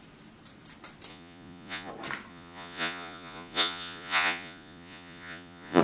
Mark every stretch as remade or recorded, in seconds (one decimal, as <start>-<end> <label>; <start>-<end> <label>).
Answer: 0.0-1.1 recorded; 1.1-1.9 remade; 1.9-2.3 recorded; 2.3-5.8 remade